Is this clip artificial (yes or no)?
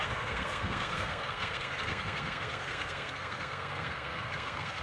yes